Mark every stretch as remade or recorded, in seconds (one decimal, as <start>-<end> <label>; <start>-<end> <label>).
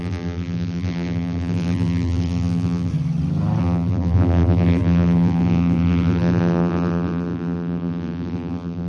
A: 0.0-2.9 remade; 2.9-3.6 recorded; 3.6-8.9 remade